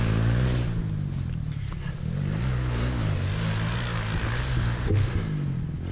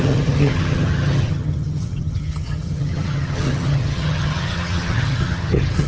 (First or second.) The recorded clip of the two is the first